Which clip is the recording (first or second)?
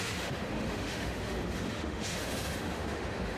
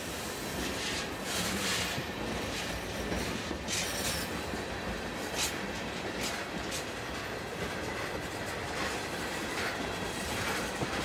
second